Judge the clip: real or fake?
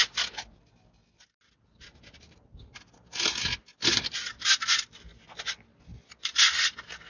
real